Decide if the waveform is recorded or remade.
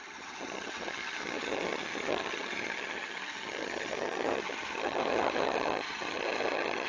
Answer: remade